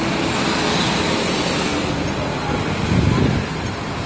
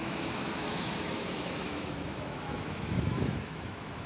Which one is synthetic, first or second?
second